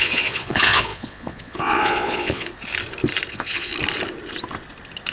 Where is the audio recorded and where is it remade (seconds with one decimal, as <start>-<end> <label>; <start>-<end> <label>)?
0.0-2.5 remade; 2.5-3.3 recorded; 3.3-3.7 remade; 3.7-5.1 recorded